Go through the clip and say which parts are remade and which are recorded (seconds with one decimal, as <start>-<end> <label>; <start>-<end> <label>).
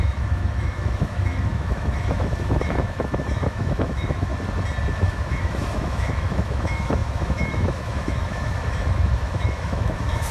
0.0-4.3 remade; 4.3-4.9 recorded; 4.9-10.3 remade